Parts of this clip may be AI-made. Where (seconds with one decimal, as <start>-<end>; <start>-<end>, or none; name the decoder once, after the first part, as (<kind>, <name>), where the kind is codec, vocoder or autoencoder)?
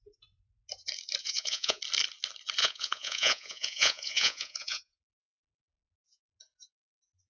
1.2-1.8 (vocoder, Vocos); 2.6-6.4